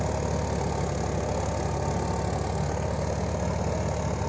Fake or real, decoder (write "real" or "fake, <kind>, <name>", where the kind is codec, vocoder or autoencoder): real